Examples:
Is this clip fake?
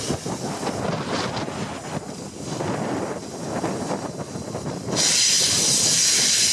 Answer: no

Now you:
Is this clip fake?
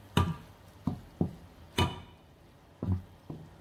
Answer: no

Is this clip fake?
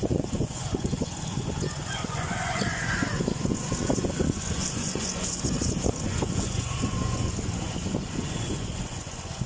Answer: yes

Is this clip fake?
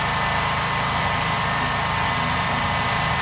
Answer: no